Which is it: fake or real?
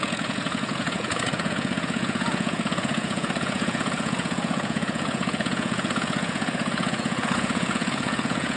fake